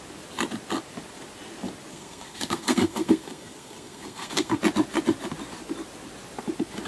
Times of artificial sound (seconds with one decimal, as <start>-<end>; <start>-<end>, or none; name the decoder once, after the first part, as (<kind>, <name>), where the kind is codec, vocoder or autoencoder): 1.9-4.6 (codec, SNAC)